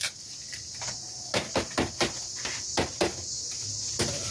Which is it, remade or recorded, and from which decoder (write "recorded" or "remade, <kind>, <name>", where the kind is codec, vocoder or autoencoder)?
recorded